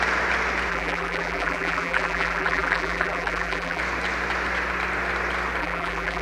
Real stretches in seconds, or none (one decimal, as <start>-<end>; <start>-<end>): 0.0-0.7; 3.8-5.6